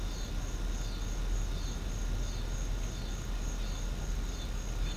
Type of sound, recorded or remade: recorded